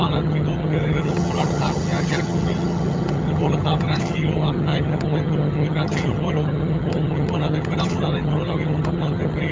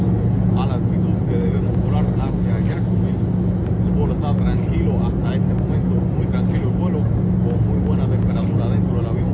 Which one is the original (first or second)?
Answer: second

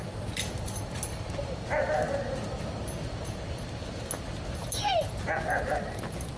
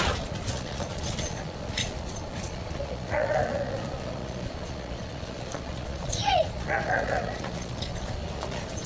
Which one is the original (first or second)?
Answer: first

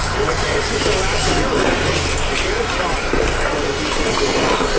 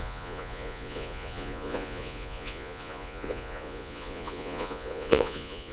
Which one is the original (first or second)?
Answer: first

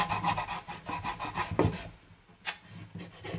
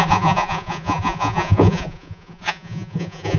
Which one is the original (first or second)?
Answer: first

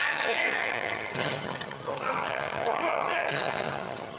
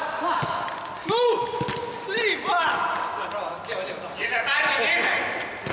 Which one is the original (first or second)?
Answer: second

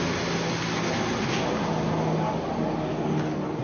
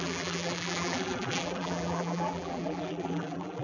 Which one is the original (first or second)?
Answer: first